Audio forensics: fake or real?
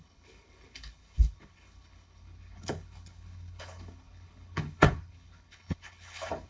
fake